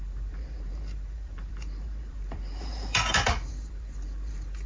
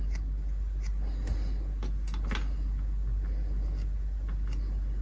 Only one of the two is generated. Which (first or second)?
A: first